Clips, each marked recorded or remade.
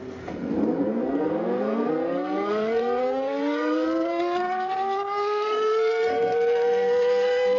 remade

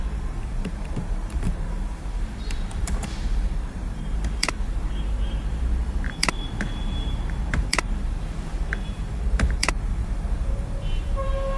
remade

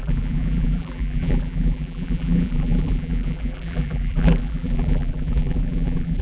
remade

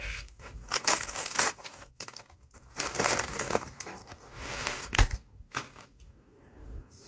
remade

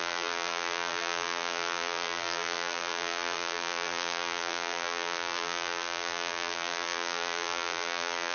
remade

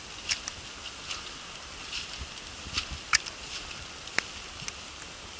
recorded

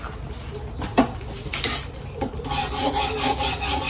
recorded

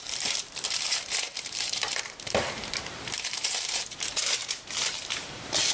remade